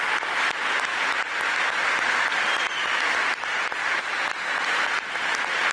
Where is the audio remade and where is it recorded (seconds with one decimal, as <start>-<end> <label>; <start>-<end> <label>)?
0.0-0.9 recorded; 0.9-4.0 remade; 4.0-5.7 recorded